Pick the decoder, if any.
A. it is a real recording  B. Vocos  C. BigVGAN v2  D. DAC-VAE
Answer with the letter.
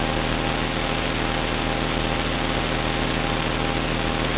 A